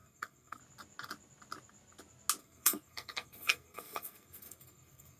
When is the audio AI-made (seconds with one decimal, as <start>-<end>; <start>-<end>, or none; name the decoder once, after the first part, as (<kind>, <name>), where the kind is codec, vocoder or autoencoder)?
0.0-0.6 (codec, SNAC); 2.4-5.2